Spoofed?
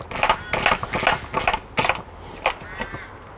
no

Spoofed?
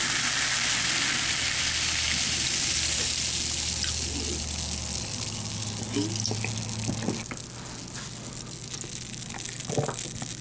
no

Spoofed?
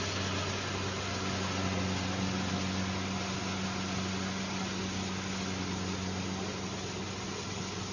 no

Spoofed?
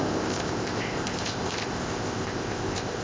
yes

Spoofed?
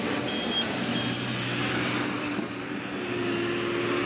no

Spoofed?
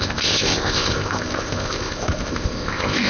yes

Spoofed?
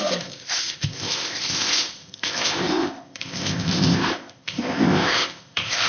yes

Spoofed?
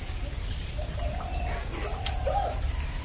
no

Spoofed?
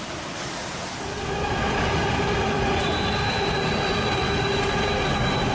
no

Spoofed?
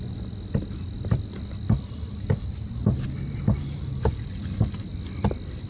no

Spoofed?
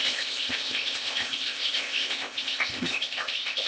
yes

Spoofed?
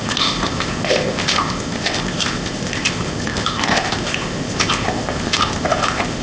yes